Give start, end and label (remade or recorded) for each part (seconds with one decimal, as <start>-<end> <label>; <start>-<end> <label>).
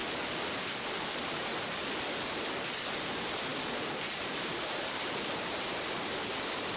0.0-0.6 recorded; 0.6-1.5 remade; 1.5-2.6 recorded; 2.6-6.8 remade